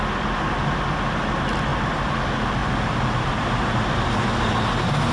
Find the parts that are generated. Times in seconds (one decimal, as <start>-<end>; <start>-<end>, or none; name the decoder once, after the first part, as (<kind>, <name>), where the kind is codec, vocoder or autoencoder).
1.7-2.2 (vocoder, BigVGAN v2); 2.6-3.3